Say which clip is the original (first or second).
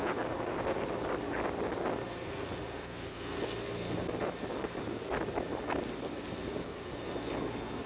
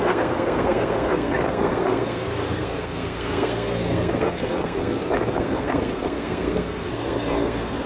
first